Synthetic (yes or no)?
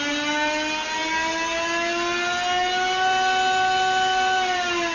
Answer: no